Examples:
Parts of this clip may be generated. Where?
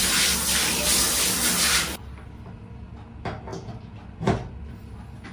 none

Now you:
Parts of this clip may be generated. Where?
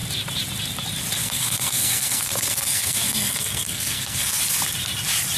1.2-4.4 (codec, SNAC)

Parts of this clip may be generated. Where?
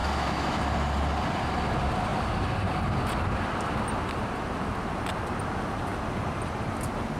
0.0-0.6 (autoencoder, DAC-VAE)